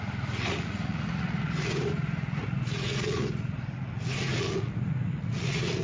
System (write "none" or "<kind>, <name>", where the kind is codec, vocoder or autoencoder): vocoder, Vocos